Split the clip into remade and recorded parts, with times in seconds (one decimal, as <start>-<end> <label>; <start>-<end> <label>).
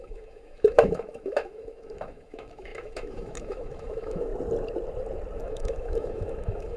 0.0-4.3 remade; 4.3-5.4 recorded; 5.4-6.8 remade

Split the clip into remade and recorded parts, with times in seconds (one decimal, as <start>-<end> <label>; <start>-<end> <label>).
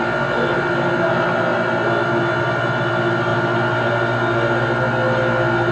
0.0-5.7 recorded